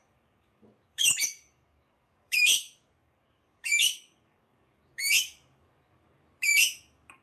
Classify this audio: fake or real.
fake